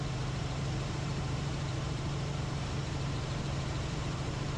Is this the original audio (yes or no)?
no